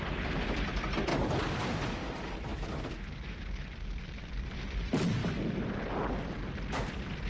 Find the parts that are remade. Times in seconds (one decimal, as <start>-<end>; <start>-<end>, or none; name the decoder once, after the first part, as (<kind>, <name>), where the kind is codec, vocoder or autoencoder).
0.0-1.1 (vocoder, BigVGAN v2); 1.9-7.3